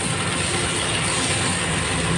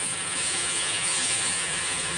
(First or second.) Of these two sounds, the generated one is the second